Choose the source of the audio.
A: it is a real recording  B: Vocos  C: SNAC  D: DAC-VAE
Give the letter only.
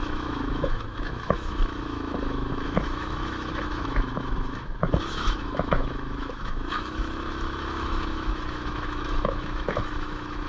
D